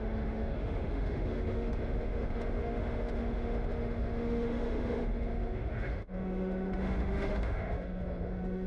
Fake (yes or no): yes